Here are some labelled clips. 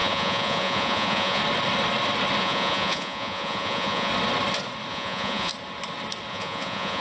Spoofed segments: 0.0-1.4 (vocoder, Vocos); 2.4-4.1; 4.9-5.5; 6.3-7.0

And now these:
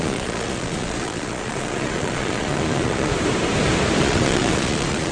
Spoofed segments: 0.0-3.1 (vocoder, Vocos); 4.0-5.1

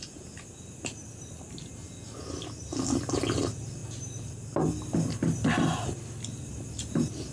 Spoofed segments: none

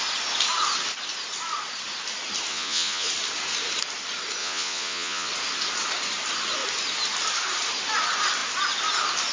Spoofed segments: 2.5-3.1 (vocoder, Vocos); 4.4-5.3

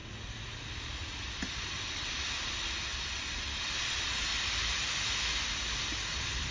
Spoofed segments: 3.8-4.3 (vocoder, Vocos)